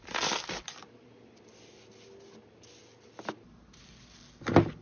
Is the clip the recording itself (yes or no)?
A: yes